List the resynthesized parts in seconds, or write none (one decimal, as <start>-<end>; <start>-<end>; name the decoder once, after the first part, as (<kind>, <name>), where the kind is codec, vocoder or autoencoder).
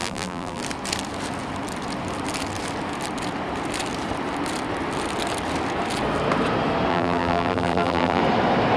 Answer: 0.0-0.6 (vocoder, BigVGAN v2); 6.9-8.2